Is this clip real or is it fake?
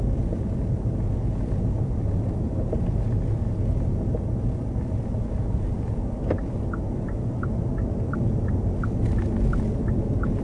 real